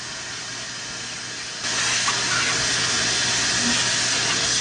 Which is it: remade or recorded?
recorded